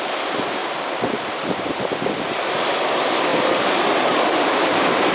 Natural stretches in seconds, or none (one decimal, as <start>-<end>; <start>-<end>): 0.0-0.6; 1.1-3.3